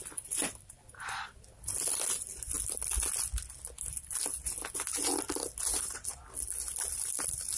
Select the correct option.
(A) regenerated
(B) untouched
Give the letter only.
B